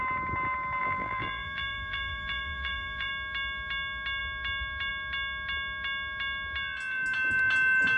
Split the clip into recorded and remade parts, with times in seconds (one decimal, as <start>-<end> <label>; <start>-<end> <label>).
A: 0.0-0.8 recorded; 0.8-3.1 remade; 3.1-8.0 recorded